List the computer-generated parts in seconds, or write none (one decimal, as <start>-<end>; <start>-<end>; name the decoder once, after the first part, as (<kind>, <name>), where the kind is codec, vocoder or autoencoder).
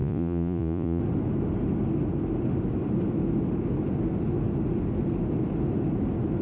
0.0-1.0 (vocoder, Vocos)